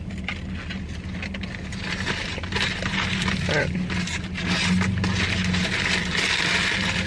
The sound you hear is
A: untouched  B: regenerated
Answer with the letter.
A